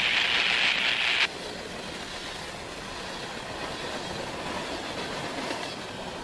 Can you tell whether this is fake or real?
real